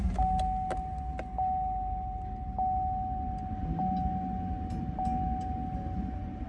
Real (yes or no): yes